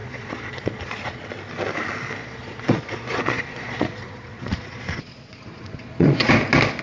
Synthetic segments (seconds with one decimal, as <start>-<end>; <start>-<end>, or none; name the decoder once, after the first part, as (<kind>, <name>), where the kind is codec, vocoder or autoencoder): 0.0-1.2 (vocoder, Vocos); 2.2-6.3